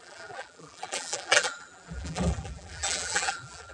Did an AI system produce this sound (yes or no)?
yes